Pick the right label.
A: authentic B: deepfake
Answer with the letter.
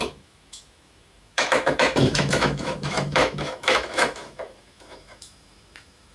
B